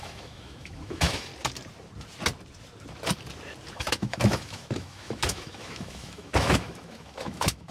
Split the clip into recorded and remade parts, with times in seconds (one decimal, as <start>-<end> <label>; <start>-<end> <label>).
0.0-1.3 remade; 1.3-3.7 recorded; 3.7-7.7 remade